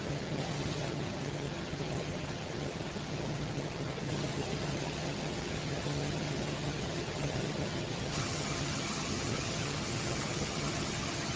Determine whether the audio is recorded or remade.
remade